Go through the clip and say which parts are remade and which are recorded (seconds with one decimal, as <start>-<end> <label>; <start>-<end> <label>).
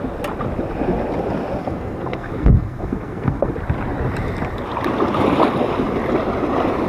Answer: 0.0-1.6 recorded; 1.6-3.5 remade; 3.5-6.9 recorded